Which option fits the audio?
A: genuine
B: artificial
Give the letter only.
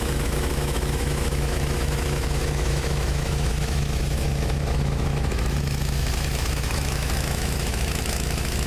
B